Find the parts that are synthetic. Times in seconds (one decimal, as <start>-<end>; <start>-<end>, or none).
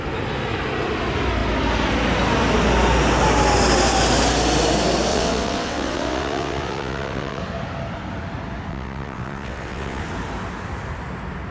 5.1-7.4; 8.7-10.0